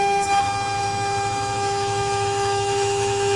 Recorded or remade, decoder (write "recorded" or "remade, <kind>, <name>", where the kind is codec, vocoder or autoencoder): remade, autoencoder, DAC-VAE